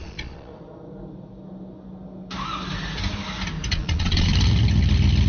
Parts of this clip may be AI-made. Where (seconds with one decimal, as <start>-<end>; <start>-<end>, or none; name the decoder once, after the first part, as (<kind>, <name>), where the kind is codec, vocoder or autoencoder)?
0.0-0.5 (vocoder, Vocos); 3.7-4.3